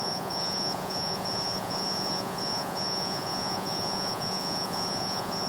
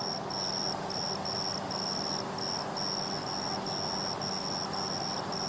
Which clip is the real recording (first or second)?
second